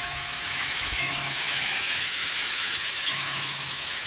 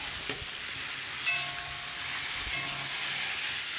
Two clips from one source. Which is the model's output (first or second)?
first